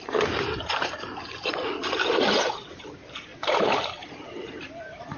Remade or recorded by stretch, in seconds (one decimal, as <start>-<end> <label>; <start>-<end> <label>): 0.0-5.2 remade